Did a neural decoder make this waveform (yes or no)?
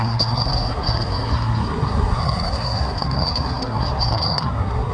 yes